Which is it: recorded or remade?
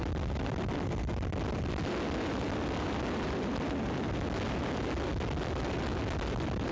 recorded